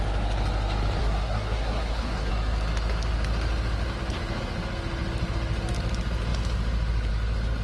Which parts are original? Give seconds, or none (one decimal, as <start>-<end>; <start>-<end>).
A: 0.0-1.0; 2.3-7.6